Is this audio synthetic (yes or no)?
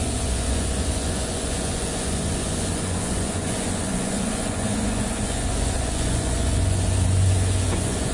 yes